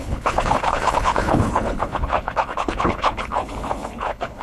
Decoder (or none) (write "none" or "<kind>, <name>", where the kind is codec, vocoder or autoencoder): codec, HILCodec